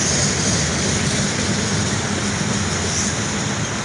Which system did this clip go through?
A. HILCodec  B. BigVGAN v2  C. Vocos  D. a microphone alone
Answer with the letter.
D